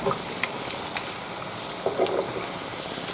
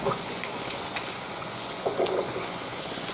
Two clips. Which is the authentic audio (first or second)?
first